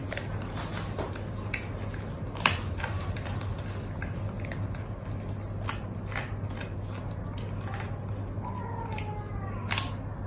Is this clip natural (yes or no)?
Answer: yes